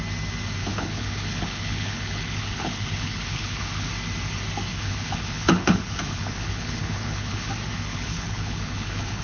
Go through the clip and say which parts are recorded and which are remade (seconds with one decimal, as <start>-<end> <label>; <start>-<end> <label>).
0.0-0.6 recorded; 0.6-3.9 remade; 3.9-4.7 recorded; 4.7-7.5 remade; 7.5-7.9 recorded; 7.9-9.2 remade